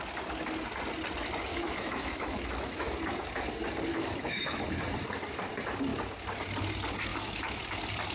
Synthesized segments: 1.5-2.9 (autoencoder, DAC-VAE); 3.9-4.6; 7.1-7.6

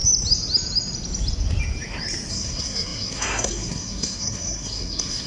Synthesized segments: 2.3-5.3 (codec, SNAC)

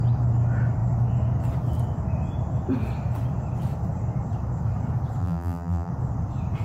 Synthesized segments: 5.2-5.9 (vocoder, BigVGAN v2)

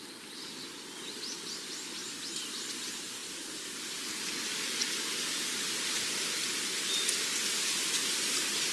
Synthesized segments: none

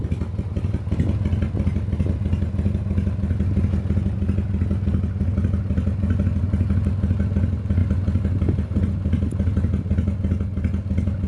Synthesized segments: none

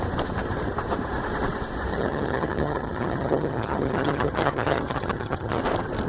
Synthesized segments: 1.9-5.6 (vocoder, HiFi-GAN)